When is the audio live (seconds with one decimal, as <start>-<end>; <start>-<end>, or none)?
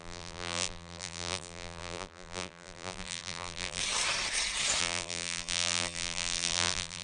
3.8-4.8